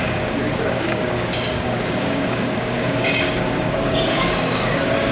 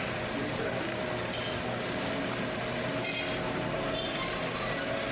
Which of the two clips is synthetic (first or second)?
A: first